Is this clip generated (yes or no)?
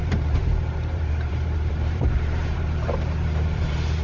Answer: yes